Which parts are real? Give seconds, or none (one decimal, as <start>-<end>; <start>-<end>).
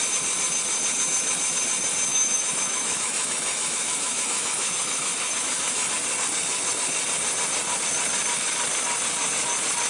0.0-2.1; 5.9-9.9